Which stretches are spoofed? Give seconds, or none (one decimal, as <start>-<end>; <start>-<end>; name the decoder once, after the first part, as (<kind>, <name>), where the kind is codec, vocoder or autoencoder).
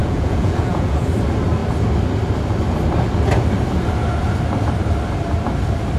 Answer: 0.0-1.0 (vocoder, Vocos)